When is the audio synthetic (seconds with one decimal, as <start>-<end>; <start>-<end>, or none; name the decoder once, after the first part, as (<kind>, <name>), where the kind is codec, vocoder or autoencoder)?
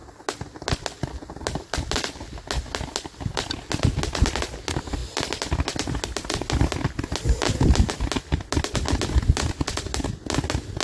none